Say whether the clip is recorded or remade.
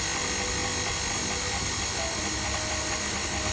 recorded